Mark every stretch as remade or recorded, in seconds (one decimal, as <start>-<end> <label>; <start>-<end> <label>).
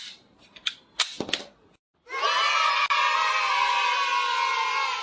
0.0-5.0 recorded